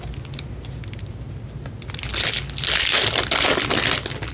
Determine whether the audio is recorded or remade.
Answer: recorded